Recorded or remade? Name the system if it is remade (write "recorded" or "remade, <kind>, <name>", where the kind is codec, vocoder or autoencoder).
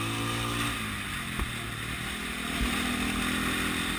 recorded